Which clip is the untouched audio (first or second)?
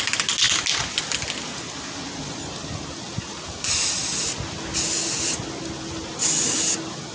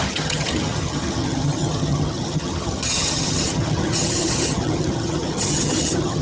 first